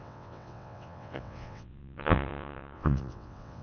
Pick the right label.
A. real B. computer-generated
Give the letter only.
B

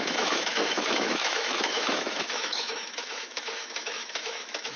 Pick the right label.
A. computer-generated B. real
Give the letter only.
A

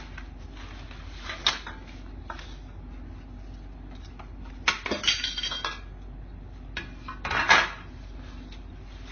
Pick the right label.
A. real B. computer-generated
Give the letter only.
A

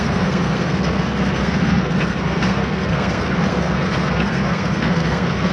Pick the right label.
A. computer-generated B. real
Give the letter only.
A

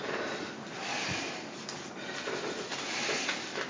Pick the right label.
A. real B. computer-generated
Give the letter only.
B